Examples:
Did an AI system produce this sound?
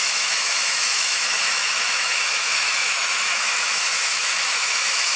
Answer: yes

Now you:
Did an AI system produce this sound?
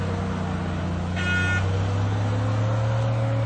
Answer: no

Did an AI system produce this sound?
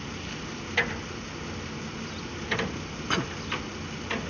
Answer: no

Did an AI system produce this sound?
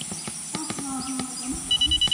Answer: no